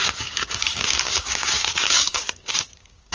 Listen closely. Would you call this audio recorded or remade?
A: remade